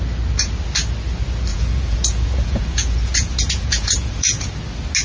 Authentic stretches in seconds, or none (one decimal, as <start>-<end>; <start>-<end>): 0.0-1.5; 4.5-5.0